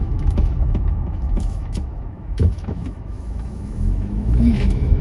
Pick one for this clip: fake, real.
fake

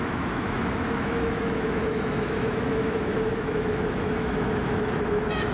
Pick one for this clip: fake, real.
fake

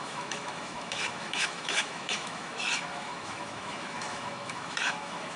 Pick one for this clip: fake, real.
fake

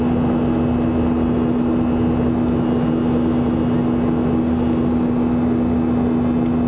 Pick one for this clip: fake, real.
real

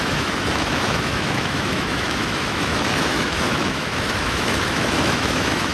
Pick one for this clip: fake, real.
fake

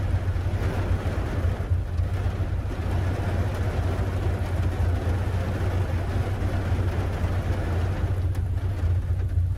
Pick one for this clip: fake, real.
real